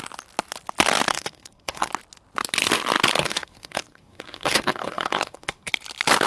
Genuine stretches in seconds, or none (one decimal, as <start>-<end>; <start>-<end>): 0.0-1.1; 1.9-3.2; 5.7-6.3